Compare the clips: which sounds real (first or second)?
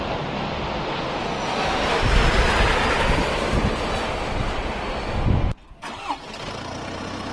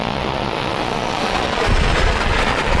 first